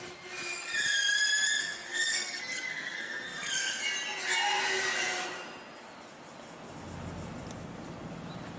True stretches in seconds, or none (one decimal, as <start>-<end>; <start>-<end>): 0.0-1.6; 3.8-8.6